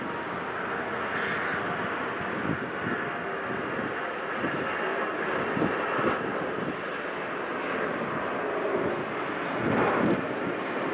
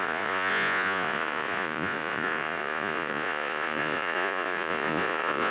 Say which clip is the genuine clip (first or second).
first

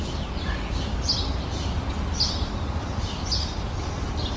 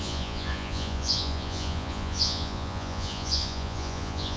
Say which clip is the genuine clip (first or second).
first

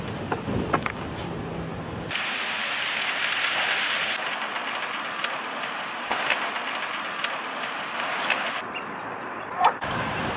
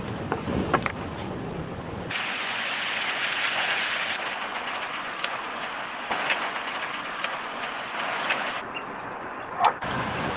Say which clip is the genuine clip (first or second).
first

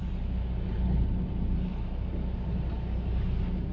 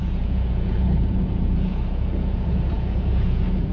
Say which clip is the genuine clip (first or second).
first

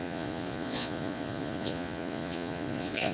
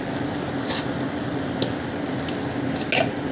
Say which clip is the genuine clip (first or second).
second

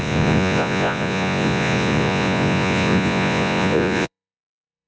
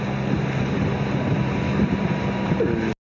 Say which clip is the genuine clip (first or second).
second